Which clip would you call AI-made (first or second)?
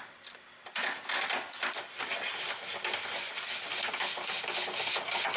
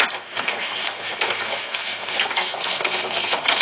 second